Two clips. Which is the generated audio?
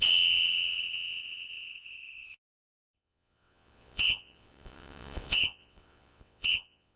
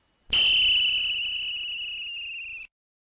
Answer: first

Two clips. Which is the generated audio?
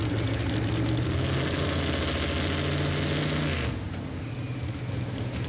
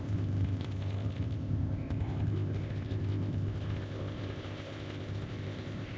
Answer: second